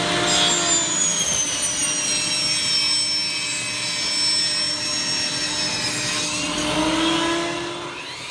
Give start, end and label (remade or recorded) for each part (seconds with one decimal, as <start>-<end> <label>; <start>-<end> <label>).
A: 0.0-8.3 recorded